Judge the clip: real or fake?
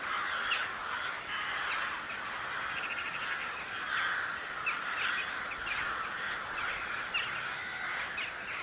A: real